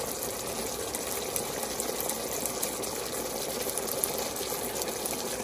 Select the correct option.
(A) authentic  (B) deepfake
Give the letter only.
A